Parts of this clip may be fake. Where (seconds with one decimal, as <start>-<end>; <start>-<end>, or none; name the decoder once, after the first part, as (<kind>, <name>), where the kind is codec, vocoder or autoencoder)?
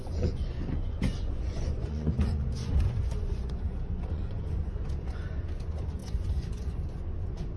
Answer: 0.0-7.6 (vocoder, Vocos)